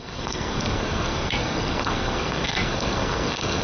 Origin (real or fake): fake